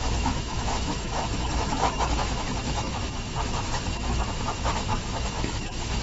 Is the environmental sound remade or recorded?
remade